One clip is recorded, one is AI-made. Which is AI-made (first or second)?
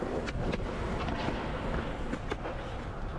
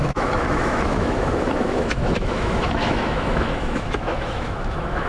second